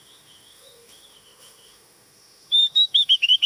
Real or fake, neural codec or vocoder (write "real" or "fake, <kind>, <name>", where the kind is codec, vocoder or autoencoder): fake, autoencoder, DAC-VAE